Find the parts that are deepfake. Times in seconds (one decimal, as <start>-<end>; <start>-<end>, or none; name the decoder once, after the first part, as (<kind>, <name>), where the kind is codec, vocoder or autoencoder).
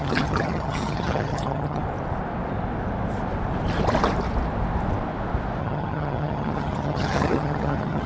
0.0-1.8 (vocoder, HiFi-GAN); 5.6-8.1